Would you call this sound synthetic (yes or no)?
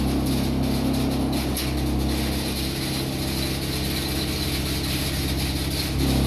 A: no